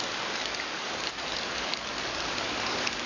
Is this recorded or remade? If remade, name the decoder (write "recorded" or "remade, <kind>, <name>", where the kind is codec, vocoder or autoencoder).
remade, codec, DAC